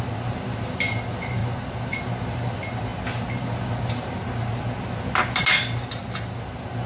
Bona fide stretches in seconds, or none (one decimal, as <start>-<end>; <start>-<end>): 0.0-6.9